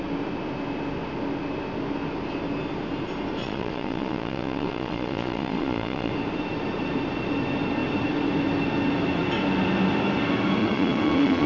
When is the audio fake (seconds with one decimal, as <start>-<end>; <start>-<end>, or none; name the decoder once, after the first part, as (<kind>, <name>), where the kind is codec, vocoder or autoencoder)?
3.4-6.1 (vocoder, Vocos); 10.6-11.5